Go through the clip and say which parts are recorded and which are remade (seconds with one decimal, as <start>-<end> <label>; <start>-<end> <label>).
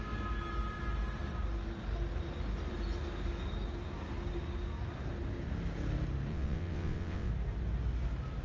0.0-6.3 recorded; 6.3-7.3 remade; 7.3-8.4 recorded